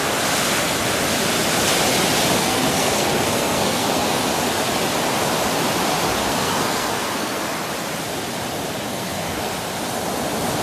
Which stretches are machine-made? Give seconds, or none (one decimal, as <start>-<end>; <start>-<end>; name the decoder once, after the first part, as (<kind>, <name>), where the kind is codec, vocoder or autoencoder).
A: 2.4-4.2 (codec, SNAC); 6.2-7.4; 8.9-9.5